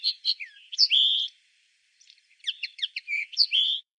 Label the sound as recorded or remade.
remade